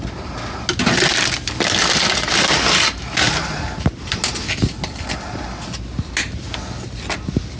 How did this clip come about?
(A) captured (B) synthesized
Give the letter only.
A